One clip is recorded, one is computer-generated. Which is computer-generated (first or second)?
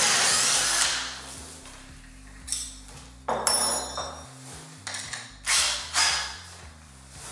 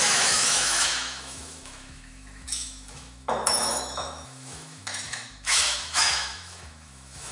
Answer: second